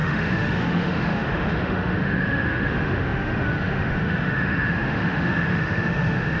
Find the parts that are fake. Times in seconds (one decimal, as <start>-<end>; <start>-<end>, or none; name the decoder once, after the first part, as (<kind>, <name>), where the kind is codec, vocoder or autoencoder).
0.0-6.4 (autoencoder, DAC-VAE)